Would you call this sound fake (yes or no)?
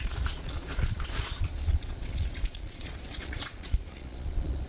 yes